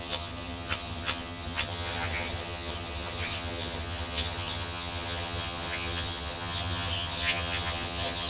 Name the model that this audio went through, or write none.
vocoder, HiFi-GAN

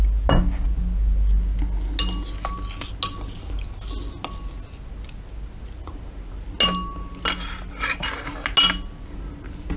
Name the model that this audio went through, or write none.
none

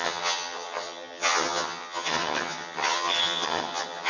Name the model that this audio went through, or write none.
vocoder, HiFi-GAN